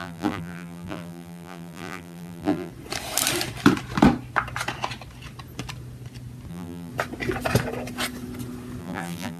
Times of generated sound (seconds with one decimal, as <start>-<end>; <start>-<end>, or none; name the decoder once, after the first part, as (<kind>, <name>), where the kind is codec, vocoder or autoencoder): 0.0-2.7 (vocoder, BigVGAN v2); 6.5-6.9; 8.8-9.4